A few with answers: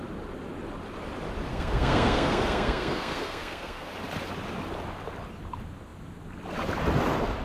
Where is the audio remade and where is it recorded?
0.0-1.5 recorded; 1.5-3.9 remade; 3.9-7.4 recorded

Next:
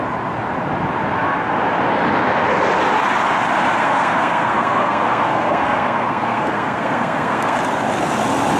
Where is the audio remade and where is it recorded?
0.0-3.8 recorded; 3.8-7.6 remade; 7.6-8.6 recorded

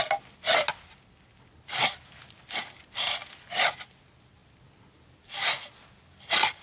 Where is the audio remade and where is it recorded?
0.0-6.6 recorded

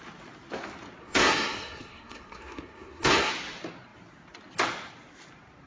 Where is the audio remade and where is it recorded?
0.0-1.0 recorded; 1.0-3.3 remade; 3.3-5.7 recorded

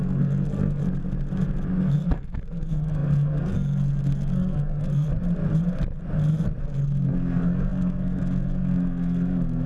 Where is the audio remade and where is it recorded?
0.0-0.8 remade; 0.8-1.8 recorded; 1.8-5.1 remade; 5.1-6.6 recorded; 6.6-9.7 remade

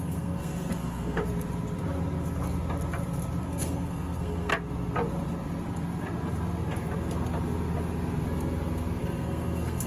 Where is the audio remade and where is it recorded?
0.0-1.2 remade; 1.2-3.4 recorded; 3.4-4.5 remade; 4.5-9.0 recorded; 9.0-9.9 remade